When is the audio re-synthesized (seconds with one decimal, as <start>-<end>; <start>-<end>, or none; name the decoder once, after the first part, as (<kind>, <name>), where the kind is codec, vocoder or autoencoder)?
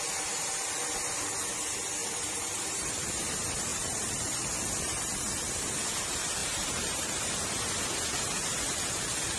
2.0-2.9 (vocoder, BigVGAN v2); 3.7-4.4; 6.4-7.2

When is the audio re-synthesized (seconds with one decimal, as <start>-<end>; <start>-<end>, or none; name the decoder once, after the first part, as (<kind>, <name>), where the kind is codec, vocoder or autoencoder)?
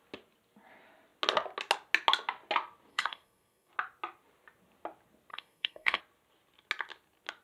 2.9-3.7 (codec, SNAC); 5.3-6.0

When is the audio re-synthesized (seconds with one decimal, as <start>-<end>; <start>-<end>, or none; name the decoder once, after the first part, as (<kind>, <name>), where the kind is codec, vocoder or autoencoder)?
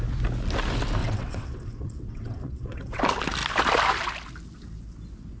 1.0-3.0 (vocoder, WaveNeXt)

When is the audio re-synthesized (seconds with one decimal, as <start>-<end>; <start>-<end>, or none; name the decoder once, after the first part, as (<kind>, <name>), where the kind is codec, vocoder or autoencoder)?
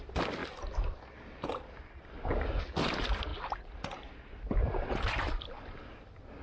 none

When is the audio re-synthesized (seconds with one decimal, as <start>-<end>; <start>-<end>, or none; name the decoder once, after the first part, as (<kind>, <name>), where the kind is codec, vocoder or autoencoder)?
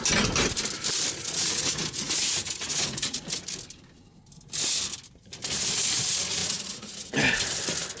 1.2-3.5 (vocoder, Vocos); 6.4-7.1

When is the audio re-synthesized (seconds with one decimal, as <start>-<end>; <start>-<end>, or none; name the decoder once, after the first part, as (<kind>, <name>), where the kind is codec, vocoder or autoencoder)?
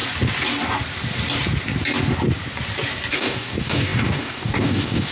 3.1-5.1 (codec, DAC)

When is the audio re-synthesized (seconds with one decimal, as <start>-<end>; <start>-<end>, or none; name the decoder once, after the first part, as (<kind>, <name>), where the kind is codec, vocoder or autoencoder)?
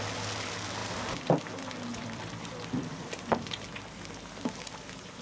0.8-1.4 (vocoder, BigVGAN v2); 1.9-3.5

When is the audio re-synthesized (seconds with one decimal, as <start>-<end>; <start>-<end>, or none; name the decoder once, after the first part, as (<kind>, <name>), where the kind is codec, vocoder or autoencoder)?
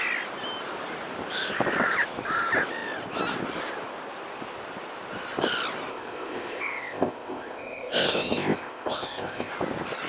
5.9-9.5 (codec, ZipCodec)